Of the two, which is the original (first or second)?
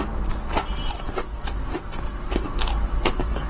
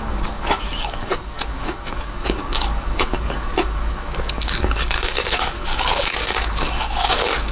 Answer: first